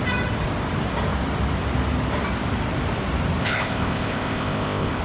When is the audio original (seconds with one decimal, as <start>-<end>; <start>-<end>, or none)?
0.0-3.4